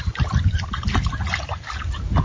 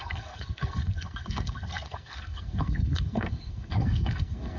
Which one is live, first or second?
first